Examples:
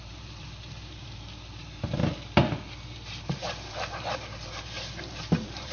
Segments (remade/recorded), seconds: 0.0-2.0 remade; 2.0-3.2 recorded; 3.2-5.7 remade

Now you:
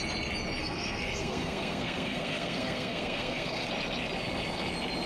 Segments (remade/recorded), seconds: 0.0-0.6 recorded; 0.6-3.7 remade; 3.7-5.1 recorded